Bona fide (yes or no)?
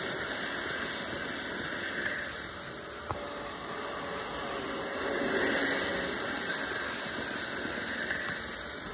yes